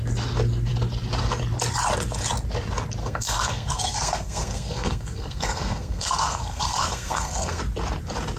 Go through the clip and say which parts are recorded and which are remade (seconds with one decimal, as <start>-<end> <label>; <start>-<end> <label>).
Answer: 0.0-3.0 recorded; 3.0-7.6 remade; 7.6-8.4 recorded